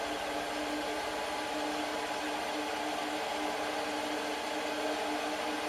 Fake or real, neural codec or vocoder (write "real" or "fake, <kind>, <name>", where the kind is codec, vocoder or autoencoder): real